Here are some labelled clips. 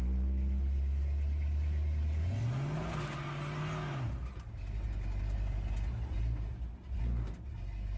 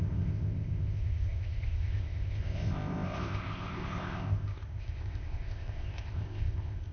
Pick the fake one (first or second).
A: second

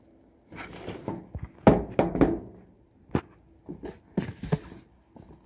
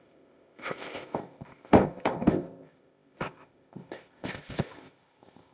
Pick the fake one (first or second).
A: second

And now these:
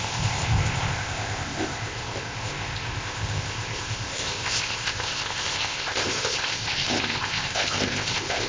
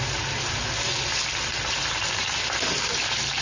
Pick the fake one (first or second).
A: first